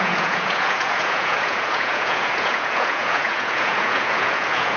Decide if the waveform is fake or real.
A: fake